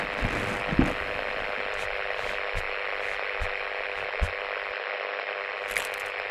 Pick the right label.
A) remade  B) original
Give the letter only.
B